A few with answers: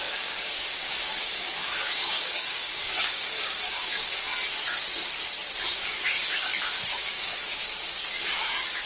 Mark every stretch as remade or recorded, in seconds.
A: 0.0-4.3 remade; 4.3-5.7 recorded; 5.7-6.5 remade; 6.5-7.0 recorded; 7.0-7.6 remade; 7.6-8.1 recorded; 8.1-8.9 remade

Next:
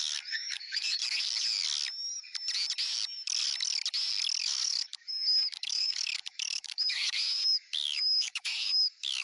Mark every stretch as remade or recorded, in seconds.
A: 0.0-1.0 remade; 1.0-4.4 recorded; 4.4-9.2 remade

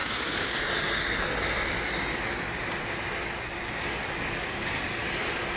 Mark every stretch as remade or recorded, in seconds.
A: 0.0-0.5 remade; 0.5-5.6 recorded

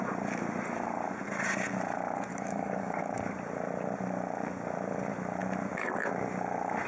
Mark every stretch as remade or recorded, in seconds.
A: 0.0-2.3 recorded; 2.3-3.0 remade; 3.0-6.9 recorded

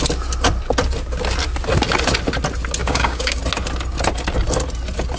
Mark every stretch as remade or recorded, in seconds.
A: 0.0-2.8 recorded; 2.8-3.4 remade; 3.4-5.2 recorded

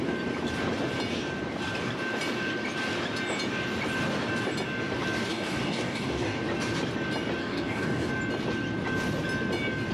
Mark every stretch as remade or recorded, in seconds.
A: 0.0-5.3 recorded; 5.3-6.4 remade; 6.4-7.4 recorded; 7.4-8.1 remade; 8.1-9.9 recorded

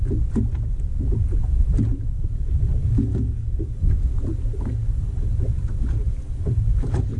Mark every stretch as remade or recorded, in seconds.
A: 0.0-3.1 recorded; 3.1-3.7 remade; 3.7-7.2 recorded

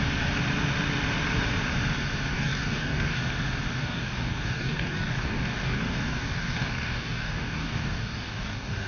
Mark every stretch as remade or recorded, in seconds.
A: 0.0-2.3 recorded; 2.3-3.2 remade; 3.2-3.8 recorded; 3.8-8.9 remade